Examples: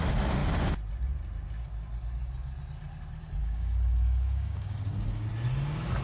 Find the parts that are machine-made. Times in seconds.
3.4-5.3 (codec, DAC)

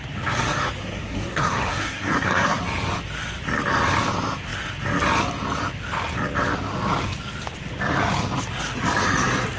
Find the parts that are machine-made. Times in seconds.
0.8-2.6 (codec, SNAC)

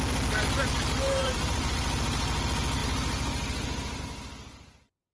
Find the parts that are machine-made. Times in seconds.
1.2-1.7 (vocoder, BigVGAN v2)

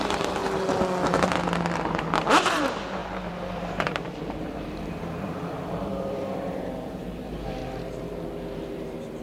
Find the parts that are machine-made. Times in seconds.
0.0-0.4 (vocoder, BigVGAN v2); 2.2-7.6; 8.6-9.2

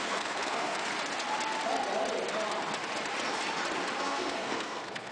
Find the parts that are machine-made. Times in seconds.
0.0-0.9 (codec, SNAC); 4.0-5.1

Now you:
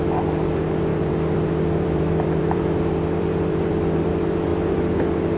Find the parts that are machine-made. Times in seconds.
0.9-4.1 (vocoder, BigVGAN v2)

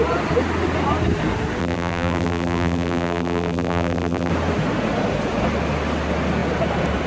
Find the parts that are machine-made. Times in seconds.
1.6-4.3 (vocoder, BigVGAN v2)